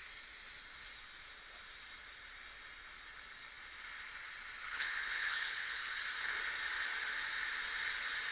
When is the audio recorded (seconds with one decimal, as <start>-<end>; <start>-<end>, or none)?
0.0-4.6; 6.0-8.3